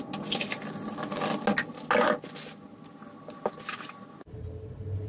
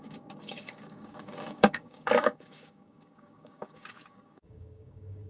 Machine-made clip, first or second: second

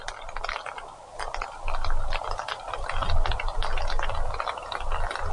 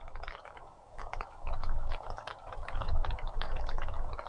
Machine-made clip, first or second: second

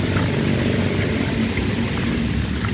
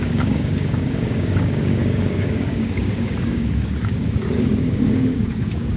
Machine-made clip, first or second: second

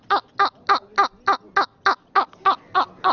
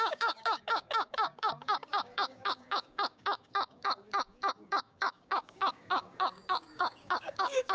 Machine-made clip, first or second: second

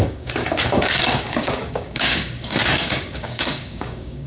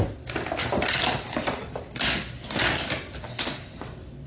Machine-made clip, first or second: first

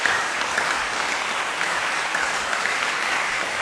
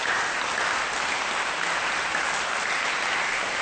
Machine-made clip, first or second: first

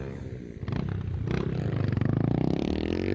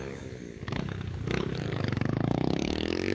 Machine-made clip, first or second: second